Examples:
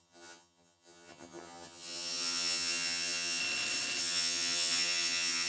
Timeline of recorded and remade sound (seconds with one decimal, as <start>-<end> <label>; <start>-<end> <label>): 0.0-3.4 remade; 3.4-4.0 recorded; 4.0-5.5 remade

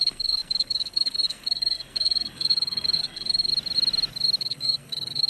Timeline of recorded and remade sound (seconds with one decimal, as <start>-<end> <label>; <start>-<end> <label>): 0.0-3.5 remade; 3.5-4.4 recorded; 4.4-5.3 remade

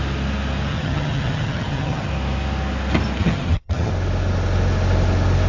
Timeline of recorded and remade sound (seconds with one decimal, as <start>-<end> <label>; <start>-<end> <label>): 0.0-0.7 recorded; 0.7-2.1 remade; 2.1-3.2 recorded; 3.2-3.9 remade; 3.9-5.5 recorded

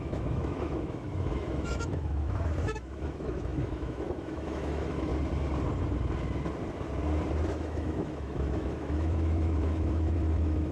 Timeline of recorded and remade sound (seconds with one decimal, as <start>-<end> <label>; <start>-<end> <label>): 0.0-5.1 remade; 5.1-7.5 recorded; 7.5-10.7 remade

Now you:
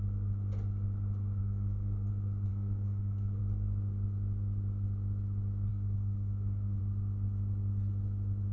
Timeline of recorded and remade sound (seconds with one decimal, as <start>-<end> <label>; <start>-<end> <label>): 0.0-1.4 recorded; 1.4-2.1 remade; 2.1-2.5 recorded; 2.5-3.4 remade; 3.4-5.7 recorded; 5.7-6.8 remade; 6.8-8.5 recorded